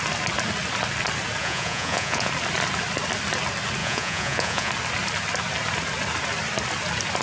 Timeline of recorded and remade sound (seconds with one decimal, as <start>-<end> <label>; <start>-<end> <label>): 0.0-1.4 recorded; 1.4-2.3 remade; 2.3-3.8 recorded; 3.8-4.7 remade; 4.7-7.2 recorded